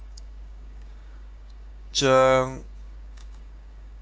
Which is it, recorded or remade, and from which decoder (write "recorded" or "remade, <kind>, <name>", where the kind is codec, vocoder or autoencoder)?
remade, codec, DAC